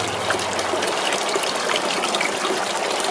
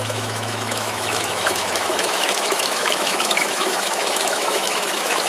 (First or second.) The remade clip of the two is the second